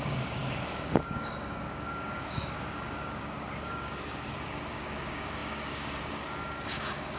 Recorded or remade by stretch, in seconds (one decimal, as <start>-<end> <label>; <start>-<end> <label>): 0.0-7.2 remade